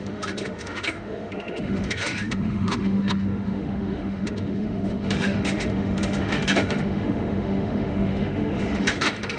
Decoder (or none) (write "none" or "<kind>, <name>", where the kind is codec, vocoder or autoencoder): autoencoder, DAC-VAE